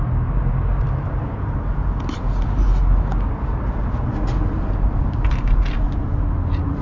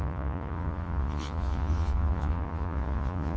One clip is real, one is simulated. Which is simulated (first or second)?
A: second